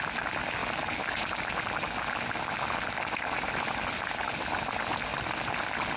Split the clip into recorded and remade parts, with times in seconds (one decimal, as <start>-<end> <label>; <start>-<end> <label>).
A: 0.0-6.0 recorded